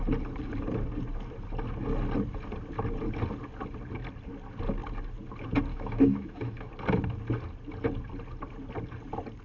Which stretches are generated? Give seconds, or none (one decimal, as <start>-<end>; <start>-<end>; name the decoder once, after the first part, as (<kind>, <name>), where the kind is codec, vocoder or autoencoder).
5.7-6.7 (autoencoder, DAC-VAE)